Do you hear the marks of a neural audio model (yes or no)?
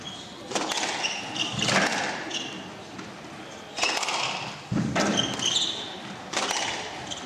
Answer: no